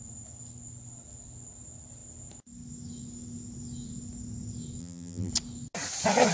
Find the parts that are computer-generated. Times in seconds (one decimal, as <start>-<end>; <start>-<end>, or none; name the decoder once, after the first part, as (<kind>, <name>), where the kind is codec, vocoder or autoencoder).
4.8-5.3 (vocoder, BigVGAN v2)